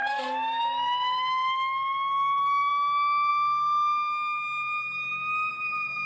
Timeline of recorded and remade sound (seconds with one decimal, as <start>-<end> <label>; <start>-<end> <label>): 0.0-6.1 recorded